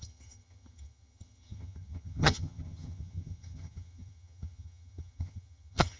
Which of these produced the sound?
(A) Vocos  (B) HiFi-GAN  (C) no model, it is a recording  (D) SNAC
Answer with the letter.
B